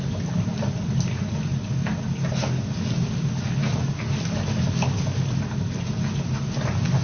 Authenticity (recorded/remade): recorded